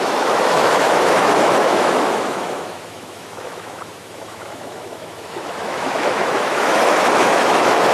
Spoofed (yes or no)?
yes